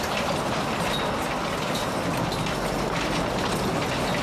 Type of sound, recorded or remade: recorded